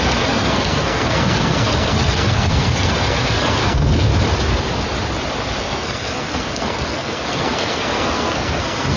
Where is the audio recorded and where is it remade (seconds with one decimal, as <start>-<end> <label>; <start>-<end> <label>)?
0.0-4.1 remade; 4.1-5.6 recorded; 5.6-9.0 remade